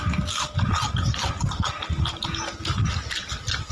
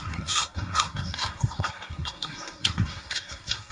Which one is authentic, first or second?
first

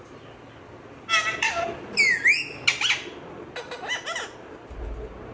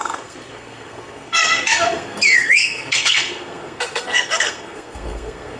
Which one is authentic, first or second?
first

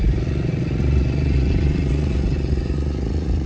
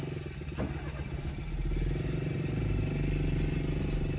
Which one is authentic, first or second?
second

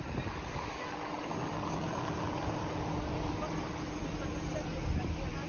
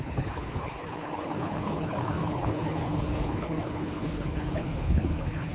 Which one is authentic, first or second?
first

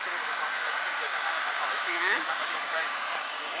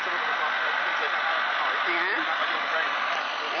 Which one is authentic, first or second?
second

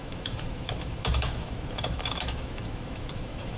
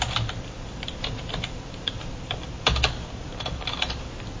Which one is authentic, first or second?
second